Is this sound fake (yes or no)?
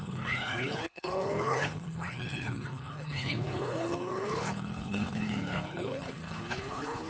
yes